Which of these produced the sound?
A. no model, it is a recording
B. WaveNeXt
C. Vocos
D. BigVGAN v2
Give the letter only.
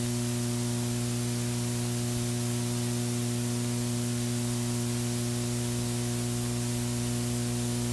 A